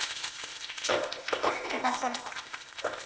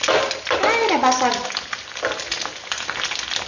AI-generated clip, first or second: first